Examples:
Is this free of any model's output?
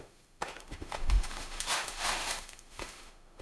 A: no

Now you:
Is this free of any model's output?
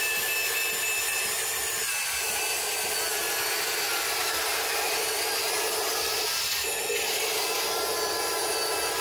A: yes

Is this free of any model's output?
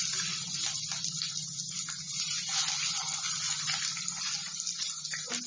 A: yes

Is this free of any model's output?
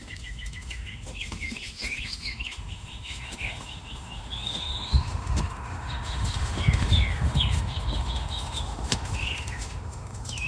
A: no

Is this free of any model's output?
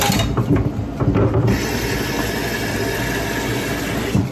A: yes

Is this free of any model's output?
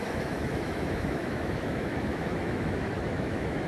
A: no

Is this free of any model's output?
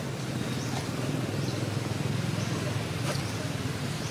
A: yes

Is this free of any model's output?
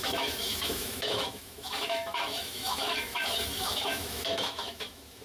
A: no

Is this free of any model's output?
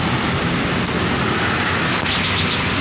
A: yes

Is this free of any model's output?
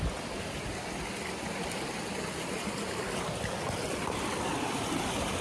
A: yes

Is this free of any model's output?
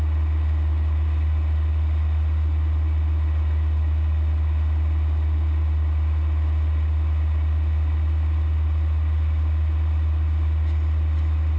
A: yes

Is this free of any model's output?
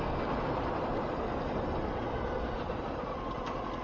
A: yes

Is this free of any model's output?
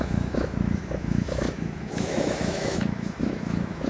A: no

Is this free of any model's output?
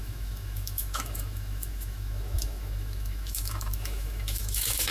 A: no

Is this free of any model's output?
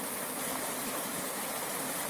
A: yes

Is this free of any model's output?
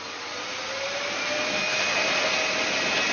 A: yes